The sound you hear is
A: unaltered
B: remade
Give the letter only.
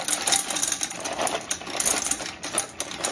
A